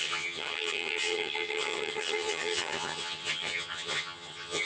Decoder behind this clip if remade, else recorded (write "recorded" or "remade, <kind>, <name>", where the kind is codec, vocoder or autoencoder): remade, vocoder, HiFi-GAN